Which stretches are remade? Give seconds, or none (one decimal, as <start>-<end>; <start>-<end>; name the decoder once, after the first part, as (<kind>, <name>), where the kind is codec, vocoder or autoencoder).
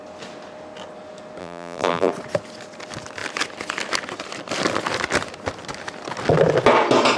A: 1.4-2.1 (vocoder, BigVGAN v2)